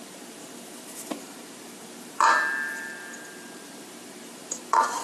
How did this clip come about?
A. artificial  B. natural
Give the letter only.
A